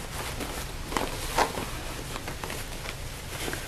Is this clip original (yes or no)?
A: yes